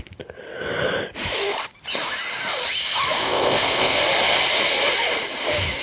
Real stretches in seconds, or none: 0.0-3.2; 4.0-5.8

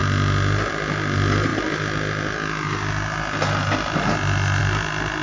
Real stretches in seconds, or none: 0.0-5.2

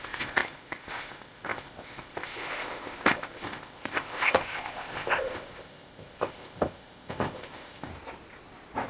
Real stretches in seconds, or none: 7.9-8.9

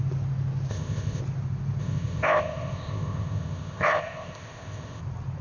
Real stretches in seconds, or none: 0.0-0.7; 1.2-1.8; 5.0-5.4

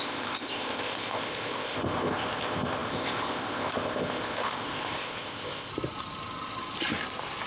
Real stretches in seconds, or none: 5.7-7.5